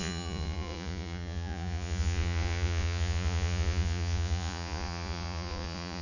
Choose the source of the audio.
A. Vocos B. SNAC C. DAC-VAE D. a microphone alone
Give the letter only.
A